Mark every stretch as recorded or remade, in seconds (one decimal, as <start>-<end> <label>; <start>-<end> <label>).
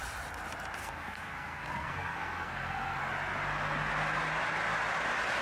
0.0-0.8 recorded; 0.8-3.1 remade; 3.1-5.4 recorded